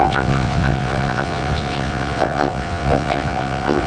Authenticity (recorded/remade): remade